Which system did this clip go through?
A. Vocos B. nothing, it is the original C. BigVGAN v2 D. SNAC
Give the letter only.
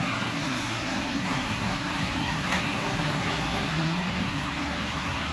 D